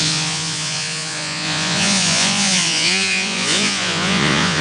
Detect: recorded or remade remade